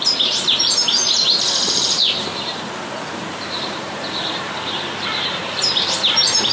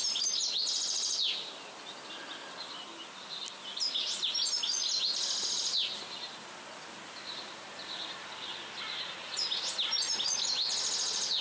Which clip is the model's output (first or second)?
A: first